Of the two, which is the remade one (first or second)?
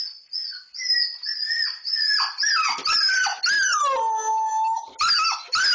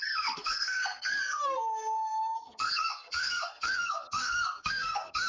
second